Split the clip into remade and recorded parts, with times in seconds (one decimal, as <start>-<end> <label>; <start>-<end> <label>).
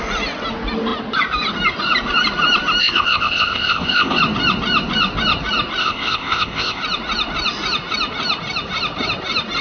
0.0-2.8 recorded; 2.8-4.2 remade; 4.2-5.8 recorded; 5.8-6.8 remade; 6.8-9.6 recorded